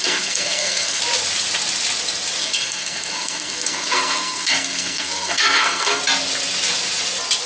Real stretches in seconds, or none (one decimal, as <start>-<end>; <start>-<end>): 1.0-2.4; 6.0-7.5